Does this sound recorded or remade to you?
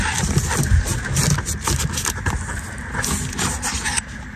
recorded